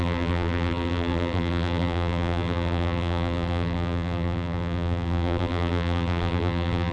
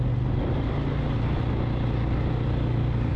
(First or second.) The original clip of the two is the second